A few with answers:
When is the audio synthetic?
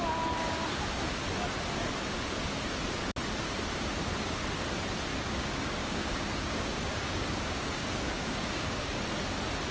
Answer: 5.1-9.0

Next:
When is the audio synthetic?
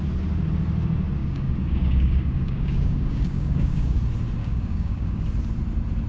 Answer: 1.2-4.0; 4.4-5.2